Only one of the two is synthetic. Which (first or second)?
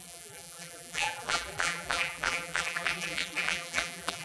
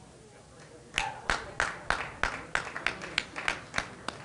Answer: first